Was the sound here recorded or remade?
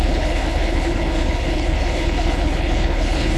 remade